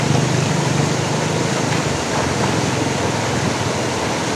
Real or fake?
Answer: real